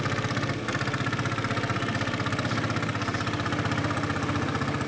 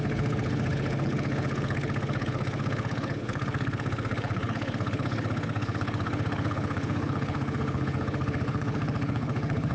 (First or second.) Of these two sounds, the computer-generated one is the second